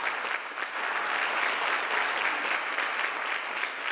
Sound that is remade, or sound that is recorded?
recorded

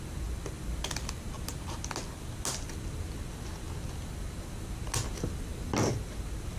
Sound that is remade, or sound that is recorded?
recorded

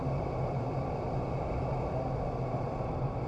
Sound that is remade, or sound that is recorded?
recorded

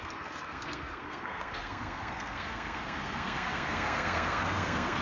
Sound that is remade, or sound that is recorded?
remade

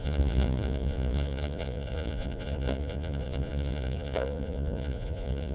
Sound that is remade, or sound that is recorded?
remade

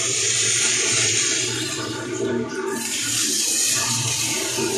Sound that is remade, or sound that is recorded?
remade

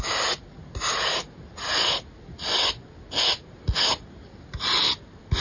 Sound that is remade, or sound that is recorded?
recorded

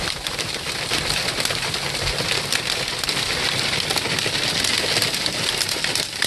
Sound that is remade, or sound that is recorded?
recorded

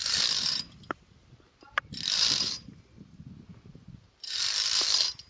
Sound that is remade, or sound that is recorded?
remade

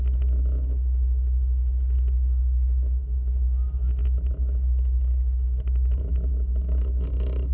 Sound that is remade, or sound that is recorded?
recorded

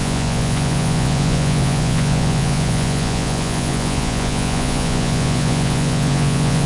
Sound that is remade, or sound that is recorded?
remade